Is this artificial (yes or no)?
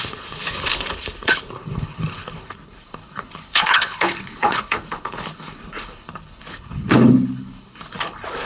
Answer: yes